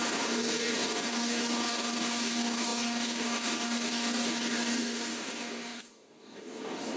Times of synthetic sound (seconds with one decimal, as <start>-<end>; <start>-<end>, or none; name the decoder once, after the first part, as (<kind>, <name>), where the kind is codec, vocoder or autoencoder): 0.0-7.0 (codec, DAC)